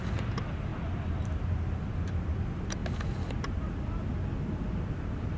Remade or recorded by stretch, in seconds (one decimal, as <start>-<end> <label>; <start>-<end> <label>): 0.0-0.7 remade; 0.7-1.9 recorded; 1.9-2.8 remade; 2.8-4.6 recorded; 4.6-5.4 remade